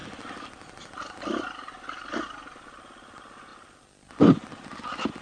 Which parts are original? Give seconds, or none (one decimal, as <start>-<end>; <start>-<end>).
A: 0.0-5.2